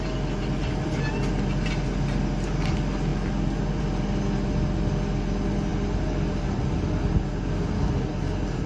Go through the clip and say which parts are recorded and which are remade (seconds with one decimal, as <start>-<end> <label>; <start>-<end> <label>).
0.0-8.7 recorded